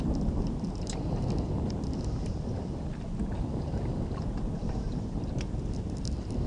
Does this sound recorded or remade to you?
recorded